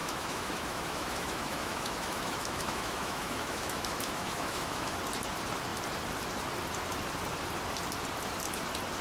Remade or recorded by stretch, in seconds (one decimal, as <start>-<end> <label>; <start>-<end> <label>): 0.0-5.0 remade; 5.0-9.0 recorded